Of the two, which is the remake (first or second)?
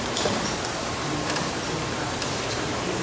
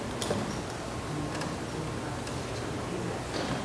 first